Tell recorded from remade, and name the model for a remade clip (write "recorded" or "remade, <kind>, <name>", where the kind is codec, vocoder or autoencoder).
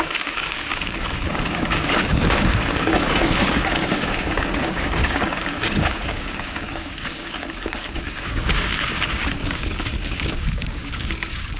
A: remade, codec, DAC